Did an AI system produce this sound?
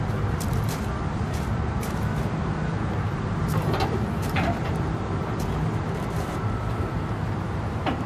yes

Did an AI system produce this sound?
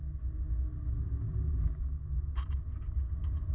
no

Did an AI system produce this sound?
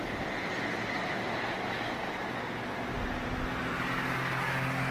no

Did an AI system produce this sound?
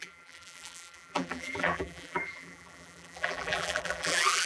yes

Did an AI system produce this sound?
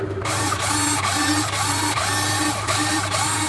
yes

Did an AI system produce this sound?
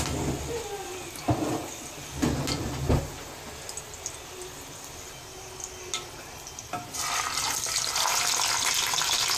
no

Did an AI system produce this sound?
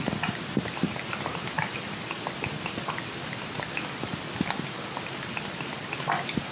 no